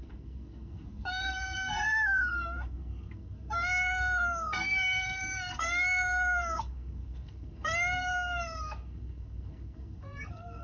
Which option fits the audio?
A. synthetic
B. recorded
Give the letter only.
A